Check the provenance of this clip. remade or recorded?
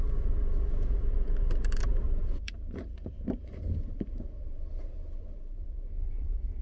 remade